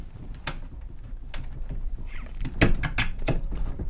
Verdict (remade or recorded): recorded